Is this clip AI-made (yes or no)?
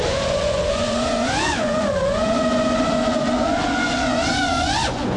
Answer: yes